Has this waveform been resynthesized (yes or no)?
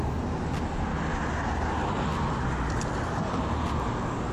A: no